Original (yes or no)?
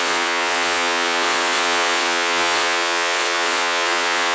no